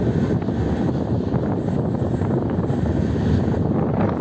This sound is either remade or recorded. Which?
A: recorded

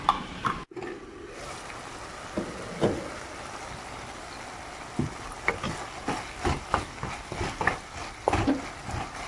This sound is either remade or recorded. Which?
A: recorded